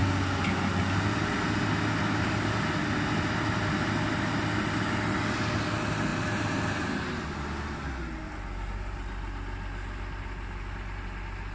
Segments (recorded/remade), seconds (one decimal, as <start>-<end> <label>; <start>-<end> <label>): 0.0-11.5 recorded